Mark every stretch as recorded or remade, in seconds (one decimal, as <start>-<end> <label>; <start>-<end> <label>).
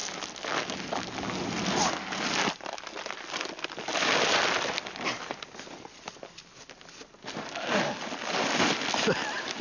0.0-9.6 recorded